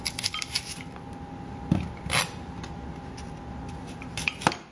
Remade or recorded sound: recorded